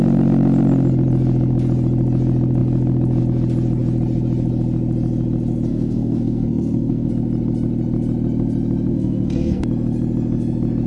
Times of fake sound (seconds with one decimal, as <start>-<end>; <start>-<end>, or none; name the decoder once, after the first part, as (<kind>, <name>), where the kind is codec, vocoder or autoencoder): 5.7-7.1 (codec, SNAC); 8.9-9.6